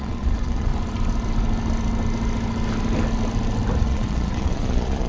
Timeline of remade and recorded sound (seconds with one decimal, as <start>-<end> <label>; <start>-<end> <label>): 0.0-0.7 remade; 0.7-3.8 recorded; 3.8-5.1 remade